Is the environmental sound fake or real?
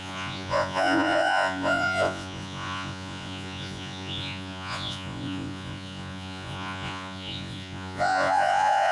fake